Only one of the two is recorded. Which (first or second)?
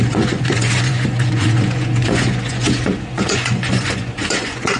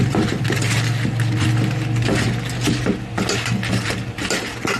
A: second